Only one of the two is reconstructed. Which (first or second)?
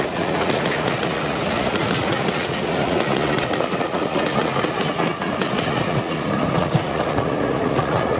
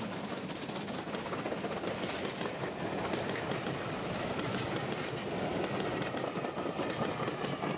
first